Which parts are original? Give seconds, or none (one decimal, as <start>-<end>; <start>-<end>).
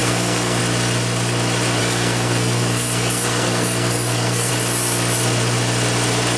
0.6-1.8; 4.5-6.4